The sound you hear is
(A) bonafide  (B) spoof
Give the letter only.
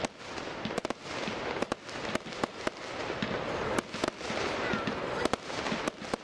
A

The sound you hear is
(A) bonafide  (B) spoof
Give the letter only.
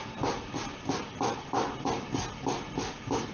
A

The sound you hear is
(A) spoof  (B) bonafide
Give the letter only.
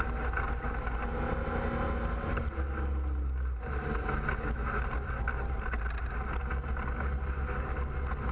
B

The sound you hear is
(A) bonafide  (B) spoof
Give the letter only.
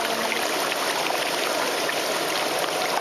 A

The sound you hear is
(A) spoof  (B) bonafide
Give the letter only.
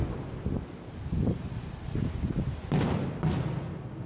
B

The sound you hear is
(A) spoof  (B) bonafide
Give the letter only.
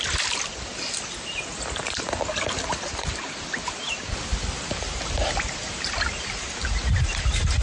B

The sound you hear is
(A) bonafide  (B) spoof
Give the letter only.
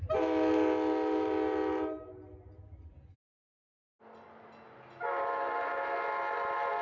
A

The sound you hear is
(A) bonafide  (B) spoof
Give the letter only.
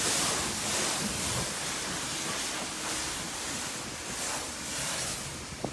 A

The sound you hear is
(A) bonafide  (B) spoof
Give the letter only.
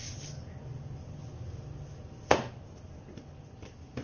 A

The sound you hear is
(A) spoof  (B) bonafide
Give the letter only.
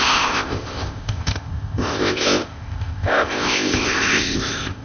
A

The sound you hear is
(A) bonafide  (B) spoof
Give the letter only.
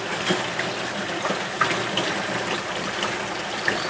A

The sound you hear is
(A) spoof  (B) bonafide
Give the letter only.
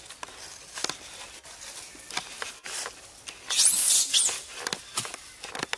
B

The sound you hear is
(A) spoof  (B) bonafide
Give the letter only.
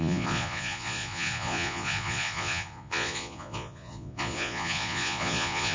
A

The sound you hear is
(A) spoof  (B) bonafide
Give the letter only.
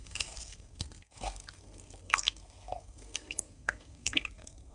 A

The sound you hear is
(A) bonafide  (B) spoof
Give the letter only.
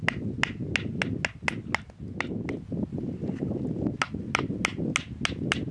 A